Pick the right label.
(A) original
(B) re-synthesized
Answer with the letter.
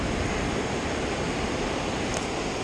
A